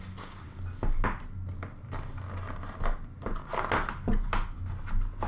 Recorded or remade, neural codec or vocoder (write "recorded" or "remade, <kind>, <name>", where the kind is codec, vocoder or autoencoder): recorded